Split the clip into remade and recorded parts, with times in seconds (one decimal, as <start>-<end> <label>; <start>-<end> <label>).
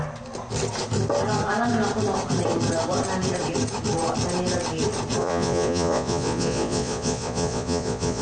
0.0-5.2 recorded; 5.2-8.2 remade